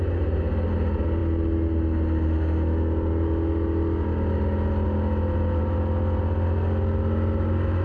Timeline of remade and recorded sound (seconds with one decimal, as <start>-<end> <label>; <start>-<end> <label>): 0.0-7.8 recorded